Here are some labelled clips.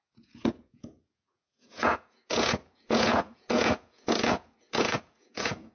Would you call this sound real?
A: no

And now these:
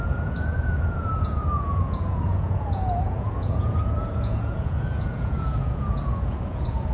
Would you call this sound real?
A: no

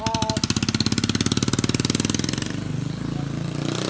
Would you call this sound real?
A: yes